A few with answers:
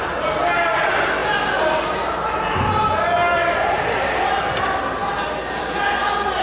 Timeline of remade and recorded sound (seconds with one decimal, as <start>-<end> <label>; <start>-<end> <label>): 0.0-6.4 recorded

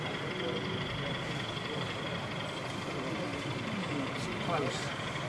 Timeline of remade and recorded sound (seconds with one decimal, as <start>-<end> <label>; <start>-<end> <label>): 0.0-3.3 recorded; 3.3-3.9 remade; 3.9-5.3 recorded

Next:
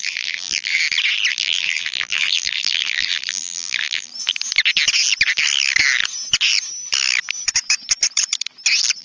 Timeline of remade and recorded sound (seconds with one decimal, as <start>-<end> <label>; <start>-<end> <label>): 0.0-0.8 remade; 0.8-1.3 recorded; 1.3-4.1 remade; 4.1-9.0 recorded

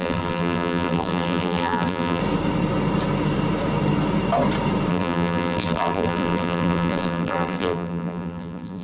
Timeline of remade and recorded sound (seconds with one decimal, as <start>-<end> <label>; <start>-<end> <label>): 0.0-2.2 remade; 2.2-4.9 recorded; 4.9-8.8 remade